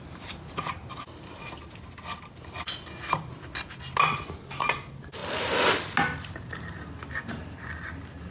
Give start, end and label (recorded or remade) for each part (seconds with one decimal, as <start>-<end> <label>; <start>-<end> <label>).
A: 0.0-8.3 recorded